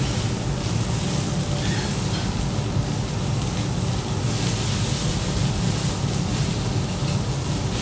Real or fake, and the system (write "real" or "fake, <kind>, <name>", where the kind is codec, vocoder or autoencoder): real